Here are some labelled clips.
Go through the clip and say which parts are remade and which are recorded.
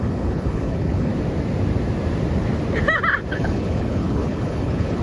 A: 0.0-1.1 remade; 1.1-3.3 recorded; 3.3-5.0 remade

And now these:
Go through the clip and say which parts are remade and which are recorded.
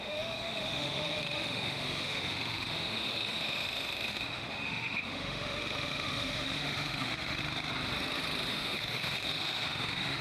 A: 0.0-7.4 remade; 7.4-8.5 recorded; 8.5-10.2 remade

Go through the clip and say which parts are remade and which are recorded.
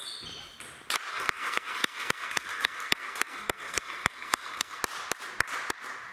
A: 0.0-1.1 recorded; 1.1-4.8 remade; 4.8-6.1 recorded